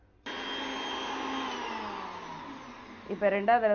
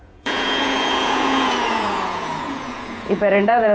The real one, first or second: first